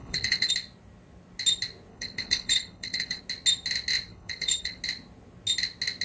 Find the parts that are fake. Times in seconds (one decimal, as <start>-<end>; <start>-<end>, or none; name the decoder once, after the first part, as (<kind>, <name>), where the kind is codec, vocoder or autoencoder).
0.0-0.5 (codec, HILCodec); 1.9-3.2; 4.1-4.8